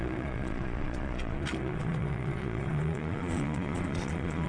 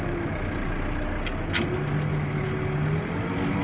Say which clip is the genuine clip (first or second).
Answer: second